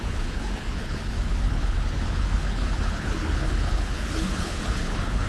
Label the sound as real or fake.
fake